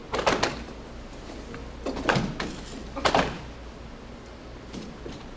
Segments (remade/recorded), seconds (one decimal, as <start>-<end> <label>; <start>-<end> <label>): 0.0-5.4 recorded